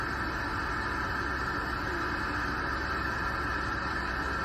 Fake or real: real